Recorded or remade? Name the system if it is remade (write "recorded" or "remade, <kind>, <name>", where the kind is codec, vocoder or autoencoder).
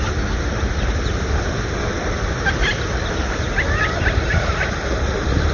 recorded